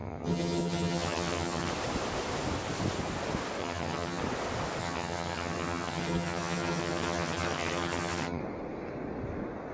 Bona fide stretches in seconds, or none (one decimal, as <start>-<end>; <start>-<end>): 1.7-3.6; 4.2-4.8; 8.4-9.7